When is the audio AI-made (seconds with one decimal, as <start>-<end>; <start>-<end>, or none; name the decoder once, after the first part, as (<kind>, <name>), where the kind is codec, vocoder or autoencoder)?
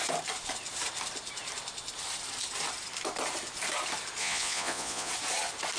4.2-5.1 (vocoder, Vocos)